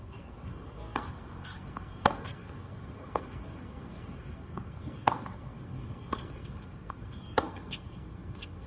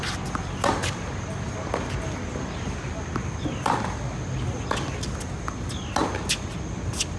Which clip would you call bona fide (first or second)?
second